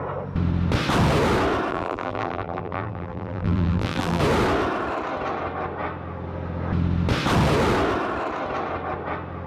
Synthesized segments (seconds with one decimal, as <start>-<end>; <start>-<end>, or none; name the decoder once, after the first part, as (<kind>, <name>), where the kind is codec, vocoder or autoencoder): 1.7-4.2 (vocoder, BigVGAN v2)